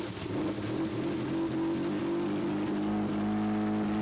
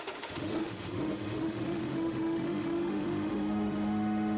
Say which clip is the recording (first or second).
first